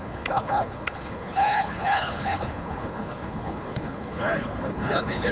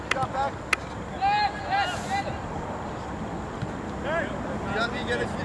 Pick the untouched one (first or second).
second